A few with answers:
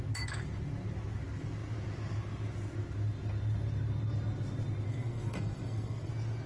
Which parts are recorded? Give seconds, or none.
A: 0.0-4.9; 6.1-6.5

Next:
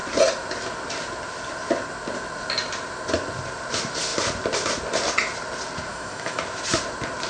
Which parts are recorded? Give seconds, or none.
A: 0.0-5.9; 6.4-7.3

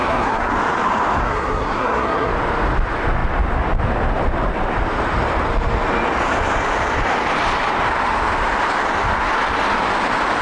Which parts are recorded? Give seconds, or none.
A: 0.5-1.2; 2.3-10.4

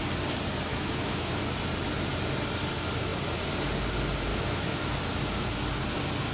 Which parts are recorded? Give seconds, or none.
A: 0.0-0.7; 1.4-4.3; 4.8-6.3

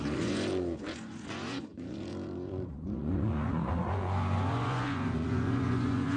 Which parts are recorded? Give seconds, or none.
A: none

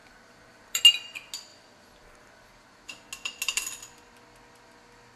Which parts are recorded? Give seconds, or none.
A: 0.8-5.2

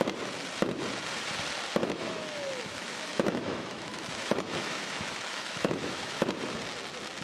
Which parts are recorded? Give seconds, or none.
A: 0.0-1.8; 6.1-7.2